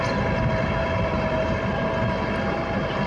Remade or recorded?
recorded